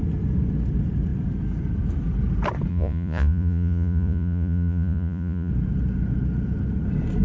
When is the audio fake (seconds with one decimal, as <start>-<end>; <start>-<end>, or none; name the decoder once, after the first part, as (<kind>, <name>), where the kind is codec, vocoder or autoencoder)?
2.7-5.5 (vocoder, Vocos)